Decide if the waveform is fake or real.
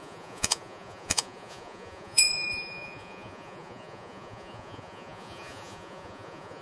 fake